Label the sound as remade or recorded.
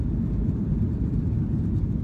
remade